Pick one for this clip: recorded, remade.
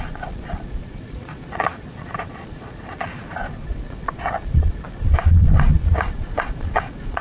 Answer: remade